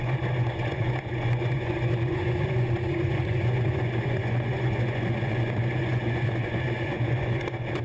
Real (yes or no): no